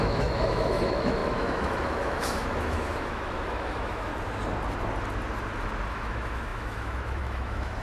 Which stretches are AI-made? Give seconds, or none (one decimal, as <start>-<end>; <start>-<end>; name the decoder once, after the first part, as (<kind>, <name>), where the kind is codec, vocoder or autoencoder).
0.0-4.1 (autoencoder, DAC-VAE); 5.9-7.8